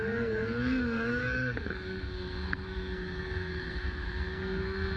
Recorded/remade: remade